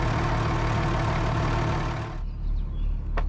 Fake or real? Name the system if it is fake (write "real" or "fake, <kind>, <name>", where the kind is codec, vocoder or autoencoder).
real